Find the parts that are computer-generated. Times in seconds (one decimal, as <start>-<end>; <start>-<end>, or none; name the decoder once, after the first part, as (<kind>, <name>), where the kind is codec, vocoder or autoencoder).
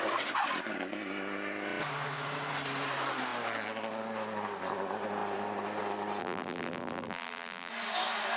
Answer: 6.2-7.7 (vocoder, BigVGAN v2)